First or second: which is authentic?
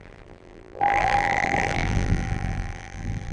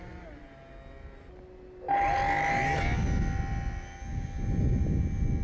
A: second